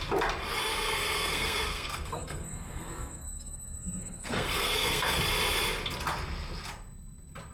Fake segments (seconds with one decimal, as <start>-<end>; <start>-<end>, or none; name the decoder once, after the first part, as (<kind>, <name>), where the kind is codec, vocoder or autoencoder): 0.7-5.2 (codec, SNAC)